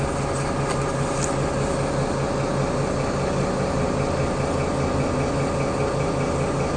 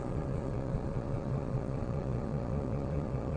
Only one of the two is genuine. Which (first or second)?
first